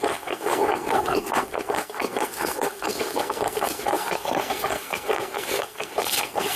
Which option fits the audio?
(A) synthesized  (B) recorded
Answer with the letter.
A